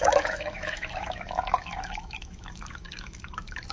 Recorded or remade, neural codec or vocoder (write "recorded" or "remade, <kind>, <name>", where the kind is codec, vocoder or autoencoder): remade, autoencoder, DAC-VAE